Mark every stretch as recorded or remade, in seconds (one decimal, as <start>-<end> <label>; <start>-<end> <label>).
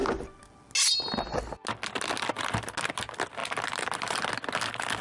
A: 0.0-5.0 recorded